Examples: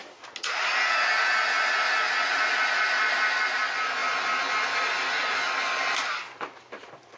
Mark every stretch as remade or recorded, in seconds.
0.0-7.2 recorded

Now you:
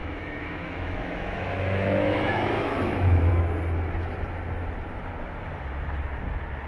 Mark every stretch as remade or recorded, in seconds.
0.0-3.3 remade; 3.3-6.7 recorded

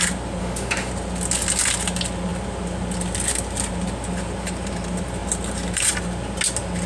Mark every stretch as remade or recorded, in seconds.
0.0-0.4 recorded; 0.4-0.9 remade; 0.9-6.9 recorded

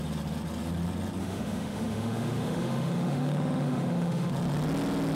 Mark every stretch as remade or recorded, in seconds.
0.0-1.2 recorded; 1.2-4.3 remade; 4.3-5.1 recorded

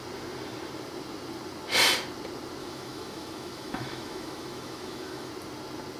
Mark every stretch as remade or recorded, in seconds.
0.0-2.6 recorded; 2.6-5.3 remade; 5.3-6.0 recorded